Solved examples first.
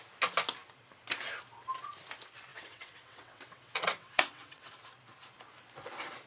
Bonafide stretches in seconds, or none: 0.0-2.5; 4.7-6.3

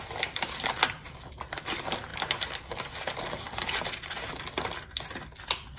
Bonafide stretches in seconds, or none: 0.0-2.1; 2.7-5.8